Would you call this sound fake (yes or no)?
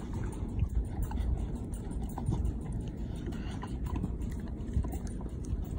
yes